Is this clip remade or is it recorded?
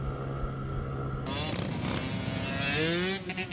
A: recorded